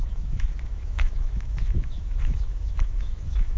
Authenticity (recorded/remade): remade